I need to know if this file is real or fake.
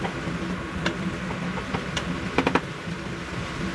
real